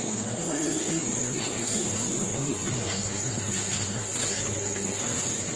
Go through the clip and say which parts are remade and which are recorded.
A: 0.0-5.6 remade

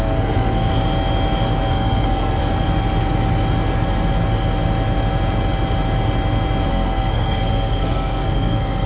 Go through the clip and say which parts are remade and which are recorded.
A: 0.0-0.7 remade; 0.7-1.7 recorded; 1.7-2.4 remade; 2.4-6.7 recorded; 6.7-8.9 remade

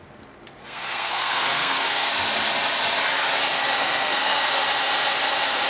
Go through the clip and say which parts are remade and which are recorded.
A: 0.0-0.6 recorded; 0.6-2.1 remade; 2.1-3.8 recorded; 3.8-4.5 remade; 4.5-5.7 recorded

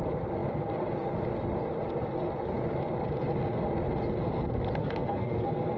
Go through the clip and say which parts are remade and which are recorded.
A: 0.0-4.8 recorded; 4.8-5.8 remade